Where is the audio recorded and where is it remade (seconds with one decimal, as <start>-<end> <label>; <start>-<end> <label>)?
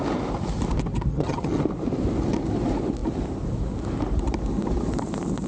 0.0-1.1 recorded; 1.1-1.6 remade; 1.6-5.5 recorded